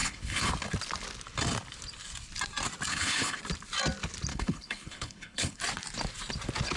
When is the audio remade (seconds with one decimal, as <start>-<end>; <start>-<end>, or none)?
0.0-0.5; 2.9-3.4; 4.3-5.6